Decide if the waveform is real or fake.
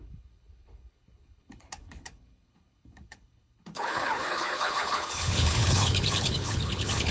fake